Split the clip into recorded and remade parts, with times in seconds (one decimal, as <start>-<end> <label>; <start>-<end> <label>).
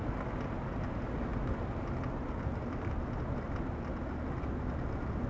0.0-5.3 recorded